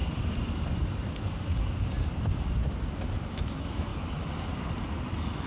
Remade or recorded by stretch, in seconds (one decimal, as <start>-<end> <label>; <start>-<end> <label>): 0.0-3.3 recorded; 3.3-3.9 remade; 3.9-5.1 recorded; 5.1-5.5 remade